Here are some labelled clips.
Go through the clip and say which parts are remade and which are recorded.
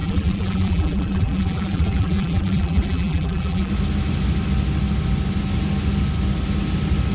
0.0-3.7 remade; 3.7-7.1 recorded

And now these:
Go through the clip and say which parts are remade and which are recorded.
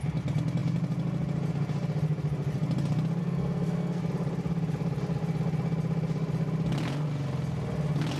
0.0-3.2 recorded; 3.2-4.0 remade; 4.0-8.2 recorded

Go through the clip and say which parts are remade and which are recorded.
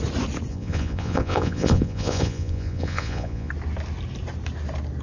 0.0-0.5 recorded; 0.5-3.5 remade; 3.5-5.0 recorded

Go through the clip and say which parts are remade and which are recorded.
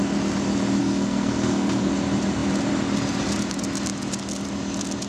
0.0-0.8 recorded; 0.8-1.9 remade; 1.9-5.1 recorded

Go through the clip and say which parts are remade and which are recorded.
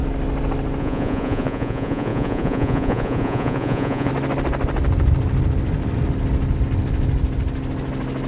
0.0-0.8 recorded; 0.8-4.1 remade; 4.1-8.3 recorded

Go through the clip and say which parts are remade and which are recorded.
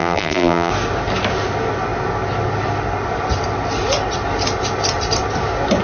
0.0-0.7 remade; 0.7-5.8 recorded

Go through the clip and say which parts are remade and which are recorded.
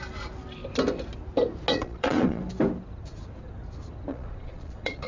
0.0-1.7 recorded; 1.7-2.4 remade; 2.4-4.1 recorded; 4.1-5.1 remade